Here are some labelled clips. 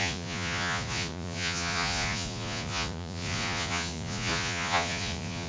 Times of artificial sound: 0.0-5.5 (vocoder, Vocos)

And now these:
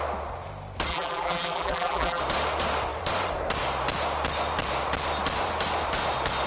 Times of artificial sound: 0.9-2.2 (vocoder, BigVGAN v2)

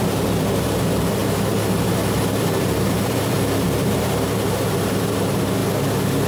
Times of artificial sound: 0.0-1.2 (vocoder, BigVGAN v2); 2.3-5.6